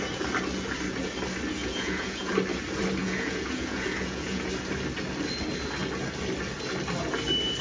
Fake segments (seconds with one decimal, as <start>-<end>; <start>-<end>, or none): 1.6-2.3; 3.0-4.5